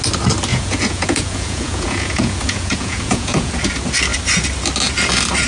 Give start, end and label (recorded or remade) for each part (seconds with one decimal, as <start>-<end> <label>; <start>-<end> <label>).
0.0-0.5 recorded; 0.5-3.5 remade; 3.5-5.5 recorded